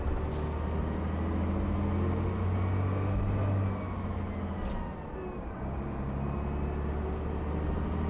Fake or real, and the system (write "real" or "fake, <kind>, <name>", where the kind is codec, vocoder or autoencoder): real